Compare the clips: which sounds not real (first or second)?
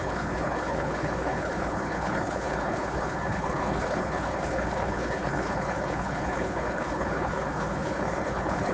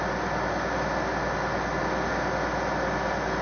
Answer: first